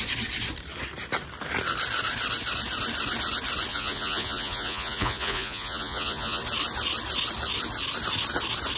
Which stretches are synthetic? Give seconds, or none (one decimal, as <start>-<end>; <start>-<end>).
3.7-6.4